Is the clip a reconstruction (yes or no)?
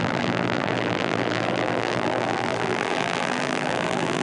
yes